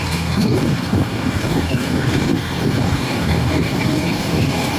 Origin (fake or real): fake